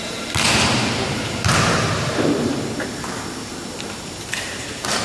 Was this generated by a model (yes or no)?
yes